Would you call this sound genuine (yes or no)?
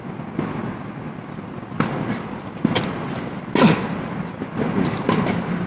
yes